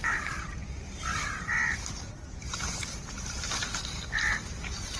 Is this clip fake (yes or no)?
yes